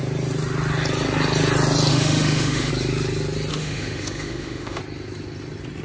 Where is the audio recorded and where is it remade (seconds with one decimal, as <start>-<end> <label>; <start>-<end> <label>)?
0.0-1.9 recorded; 1.9-2.7 remade; 2.7-3.5 recorded; 3.5-4.8 remade; 4.8-5.8 recorded